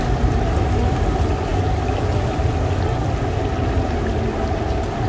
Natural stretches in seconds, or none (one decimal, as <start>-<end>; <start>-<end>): 0.0-5.1